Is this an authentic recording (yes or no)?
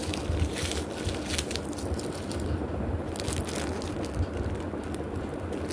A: yes